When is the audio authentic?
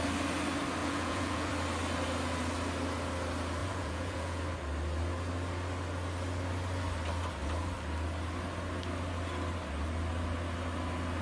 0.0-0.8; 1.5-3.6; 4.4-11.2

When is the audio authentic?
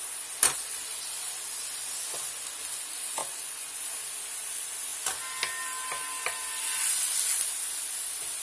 0.0-3.2; 3.8-8.4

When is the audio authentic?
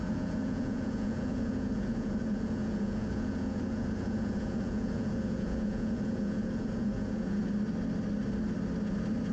7.4-9.3